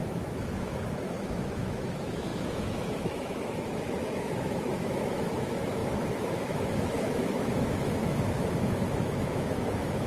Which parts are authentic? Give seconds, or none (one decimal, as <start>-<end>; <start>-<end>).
none